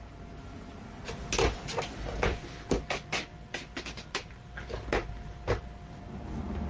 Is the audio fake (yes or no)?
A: no